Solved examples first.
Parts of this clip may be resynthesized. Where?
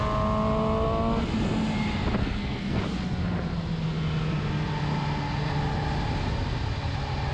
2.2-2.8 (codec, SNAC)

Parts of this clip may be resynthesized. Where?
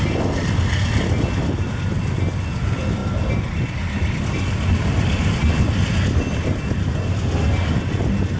none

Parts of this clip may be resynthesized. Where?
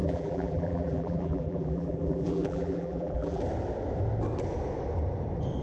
0.0-3.4 (vocoder, BigVGAN v2)